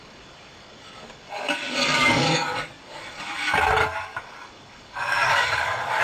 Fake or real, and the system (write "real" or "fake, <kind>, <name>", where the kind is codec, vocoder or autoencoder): fake, codec, DAC